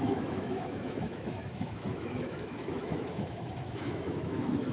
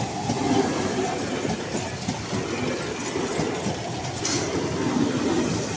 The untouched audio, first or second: second